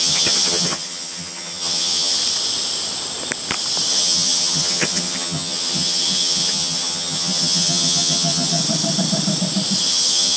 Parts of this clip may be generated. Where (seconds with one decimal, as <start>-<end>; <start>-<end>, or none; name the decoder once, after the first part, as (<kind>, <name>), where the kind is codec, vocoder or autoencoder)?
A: 0.0-2.2 (vocoder, HiFi-GAN); 3.9-8.6; 9.8-10.4